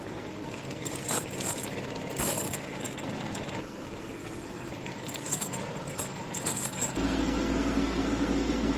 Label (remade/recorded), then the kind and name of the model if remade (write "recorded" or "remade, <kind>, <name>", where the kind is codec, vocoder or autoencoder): remade, codec, SNAC